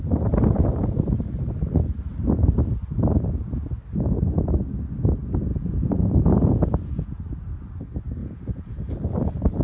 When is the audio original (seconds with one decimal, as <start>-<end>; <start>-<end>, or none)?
0.0-5.5; 7.2-8.2; 8.9-9.6